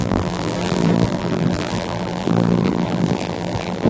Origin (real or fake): fake